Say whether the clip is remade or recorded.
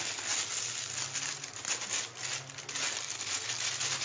recorded